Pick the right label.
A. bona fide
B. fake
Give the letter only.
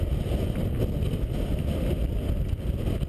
A